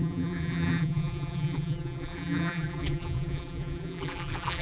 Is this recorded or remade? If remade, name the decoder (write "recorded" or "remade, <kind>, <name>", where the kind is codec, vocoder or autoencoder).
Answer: remade, vocoder, BigVGAN v2